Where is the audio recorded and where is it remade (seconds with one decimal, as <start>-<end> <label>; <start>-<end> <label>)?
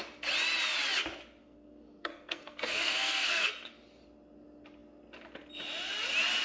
0.0-1.4 recorded; 1.4-3.5 remade; 3.5-6.4 recorded